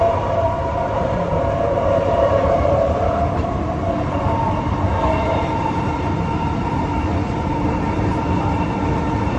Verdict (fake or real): fake